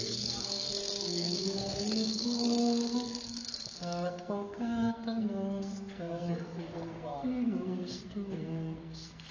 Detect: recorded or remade remade